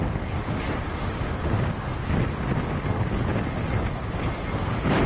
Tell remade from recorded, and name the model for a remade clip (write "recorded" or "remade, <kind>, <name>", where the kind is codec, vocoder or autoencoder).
recorded